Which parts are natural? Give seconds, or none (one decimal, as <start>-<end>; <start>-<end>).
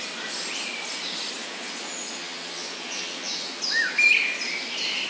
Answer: 0.0-1.4; 3.6-5.1